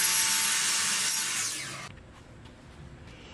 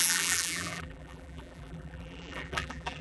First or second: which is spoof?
second